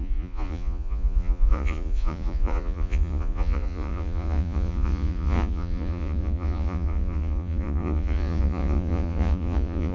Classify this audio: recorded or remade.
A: remade